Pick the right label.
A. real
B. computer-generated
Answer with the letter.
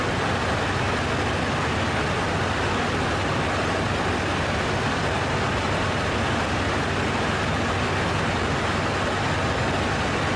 A